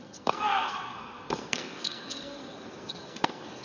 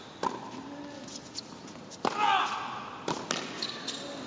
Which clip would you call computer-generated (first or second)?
first